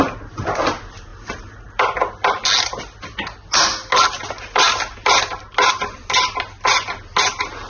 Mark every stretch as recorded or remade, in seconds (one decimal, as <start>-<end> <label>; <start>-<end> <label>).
0.0-7.7 recorded